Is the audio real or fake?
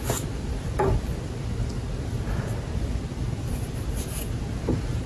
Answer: real